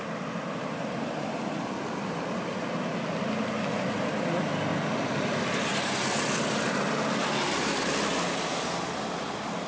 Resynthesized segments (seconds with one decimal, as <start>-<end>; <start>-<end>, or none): none